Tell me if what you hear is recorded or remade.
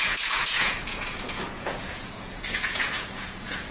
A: remade